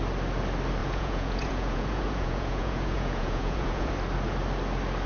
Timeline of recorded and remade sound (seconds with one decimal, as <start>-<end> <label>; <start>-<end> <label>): 0.0-0.8 recorded; 0.8-3.9 remade; 3.9-5.1 recorded